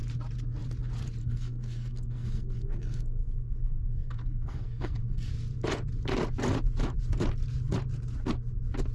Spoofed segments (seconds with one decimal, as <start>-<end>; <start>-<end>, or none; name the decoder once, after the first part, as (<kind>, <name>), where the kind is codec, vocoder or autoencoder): 1.2-5.3 (codec, SNAC)